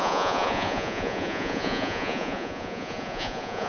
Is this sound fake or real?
fake